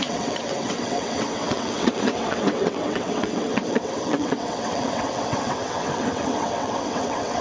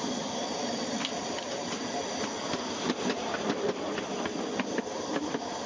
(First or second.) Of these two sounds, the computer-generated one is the first